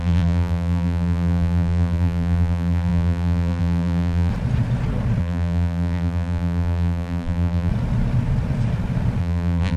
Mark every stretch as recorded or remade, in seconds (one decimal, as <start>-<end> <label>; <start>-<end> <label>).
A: 0.0-4.3 remade; 4.3-5.2 recorded; 5.2-7.7 remade; 7.7-9.2 recorded; 9.2-9.8 remade